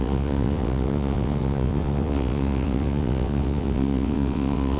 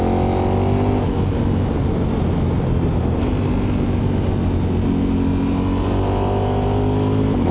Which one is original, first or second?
second